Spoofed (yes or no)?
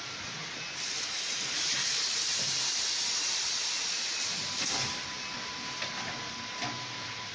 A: no